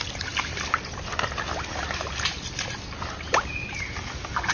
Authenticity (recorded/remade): recorded